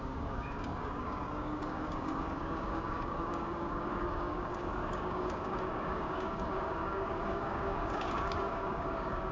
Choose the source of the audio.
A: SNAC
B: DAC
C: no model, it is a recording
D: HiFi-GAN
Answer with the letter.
B